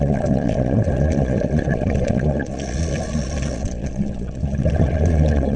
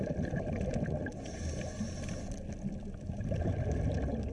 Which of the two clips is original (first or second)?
second